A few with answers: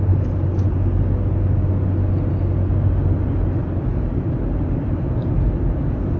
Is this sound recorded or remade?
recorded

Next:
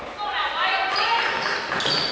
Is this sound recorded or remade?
recorded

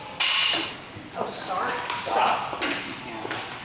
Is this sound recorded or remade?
recorded